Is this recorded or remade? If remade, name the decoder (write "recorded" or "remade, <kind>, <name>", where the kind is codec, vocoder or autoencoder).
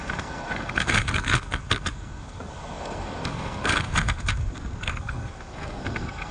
remade, codec, SNAC